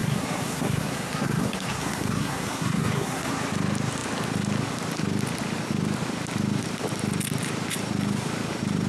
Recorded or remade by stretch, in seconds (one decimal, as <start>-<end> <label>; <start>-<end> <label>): 0.0-3.3 remade; 3.3-8.9 recorded